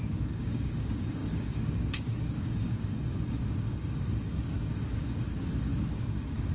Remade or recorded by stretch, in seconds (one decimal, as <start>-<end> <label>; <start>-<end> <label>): 0.0-6.5 remade